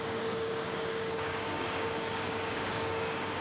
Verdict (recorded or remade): remade